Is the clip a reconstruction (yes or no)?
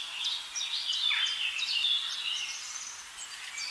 no